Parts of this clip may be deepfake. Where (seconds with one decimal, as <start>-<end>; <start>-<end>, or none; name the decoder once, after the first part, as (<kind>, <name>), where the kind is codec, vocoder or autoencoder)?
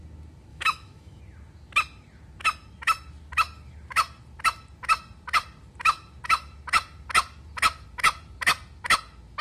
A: 0.5-1.2 (autoencoder, DAC-VAE)